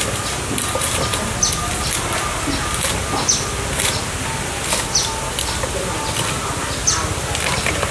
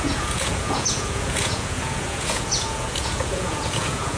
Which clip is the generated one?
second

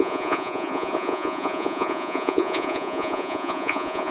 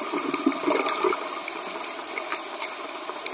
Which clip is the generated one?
first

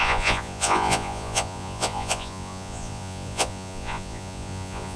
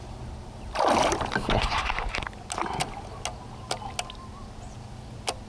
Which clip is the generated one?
first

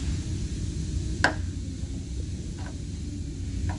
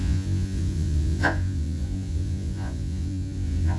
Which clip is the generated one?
second